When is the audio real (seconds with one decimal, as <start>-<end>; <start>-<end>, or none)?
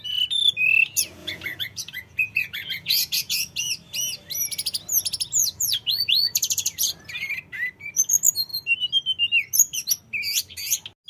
0.0-1.2; 3.7-5.4; 6.9-11.1